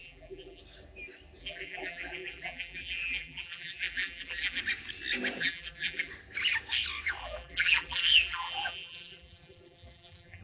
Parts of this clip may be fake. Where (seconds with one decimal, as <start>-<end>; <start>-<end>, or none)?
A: 0.0-0.6; 1.4-4.6; 5.4-6.1; 7.2-10.4